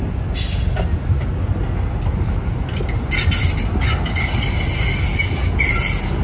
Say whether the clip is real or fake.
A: real